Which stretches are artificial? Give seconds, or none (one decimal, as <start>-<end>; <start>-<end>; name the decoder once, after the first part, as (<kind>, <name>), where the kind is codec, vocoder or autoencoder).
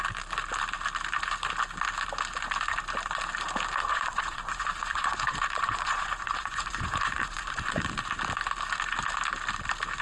3.9-8.0 (vocoder, Vocos)